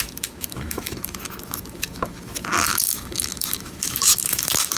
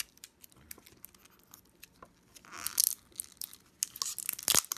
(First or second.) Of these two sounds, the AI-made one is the first